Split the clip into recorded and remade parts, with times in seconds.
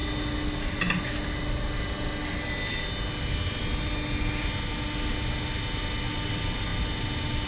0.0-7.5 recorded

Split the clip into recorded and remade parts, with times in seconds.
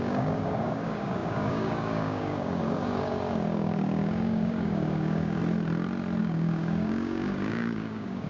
0.0-5.4 remade; 5.4-6.2 recorded; 6.2-8.3 remade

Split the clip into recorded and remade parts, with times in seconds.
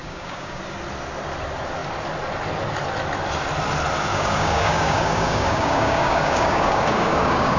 0.0-0.6 remade; 0.6-4.1 recorded; 4.1-7.6 remade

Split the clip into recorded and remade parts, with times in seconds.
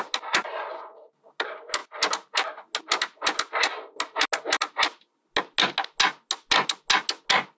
0.0-7.6 recorded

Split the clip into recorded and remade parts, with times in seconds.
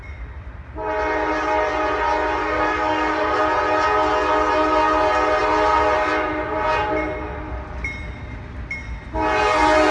0.0-2.4 recorded; 2.4-3.4 remade; 3.4-9.9 recorded